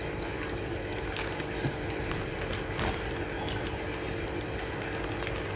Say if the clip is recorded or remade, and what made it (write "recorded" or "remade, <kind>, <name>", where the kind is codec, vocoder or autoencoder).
recorded